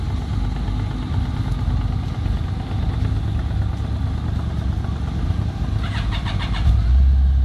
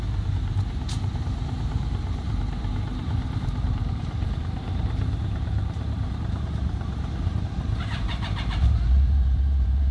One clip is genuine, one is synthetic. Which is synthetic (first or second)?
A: second